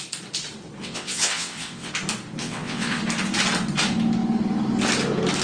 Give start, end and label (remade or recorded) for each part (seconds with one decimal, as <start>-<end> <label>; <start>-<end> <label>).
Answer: 0.0-0.8 recorded; 0.8-1.9 remade; 1.9-2.4 recorded; 2.4-3.0 remade; 3.0-5.4 recorded

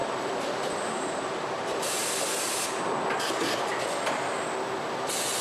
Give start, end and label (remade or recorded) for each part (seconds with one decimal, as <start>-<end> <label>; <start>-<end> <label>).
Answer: 0.0-1.9 remade; 1.9-5.4 recorded

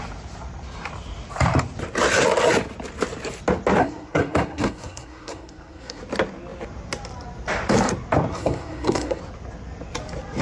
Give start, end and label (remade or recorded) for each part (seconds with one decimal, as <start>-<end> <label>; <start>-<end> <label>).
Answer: 0.0-3.8 recorded; 3.8-6.0 remade; 6.0-8.3 recorded; 8.3-9.2 remade; 9.2-10.4 recorded

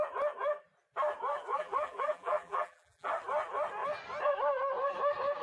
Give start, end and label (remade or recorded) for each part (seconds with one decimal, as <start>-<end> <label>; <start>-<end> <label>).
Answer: 0.0-1.5 recorded; 1.5-3.1 remade; 3.1-5.4 recorded